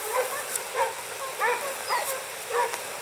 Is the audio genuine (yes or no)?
yes